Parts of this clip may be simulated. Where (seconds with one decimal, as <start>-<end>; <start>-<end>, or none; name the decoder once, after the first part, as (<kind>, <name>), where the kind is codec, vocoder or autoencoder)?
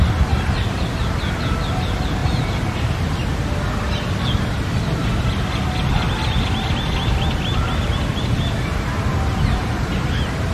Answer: none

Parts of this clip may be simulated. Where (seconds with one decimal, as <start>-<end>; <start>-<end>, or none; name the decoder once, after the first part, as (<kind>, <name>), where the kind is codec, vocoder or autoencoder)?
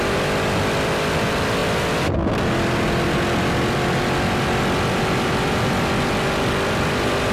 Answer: none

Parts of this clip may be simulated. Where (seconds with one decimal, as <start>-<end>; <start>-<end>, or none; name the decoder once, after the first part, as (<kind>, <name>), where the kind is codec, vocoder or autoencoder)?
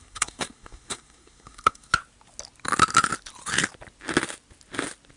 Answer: 0.0-1.9 (codec, SNAC)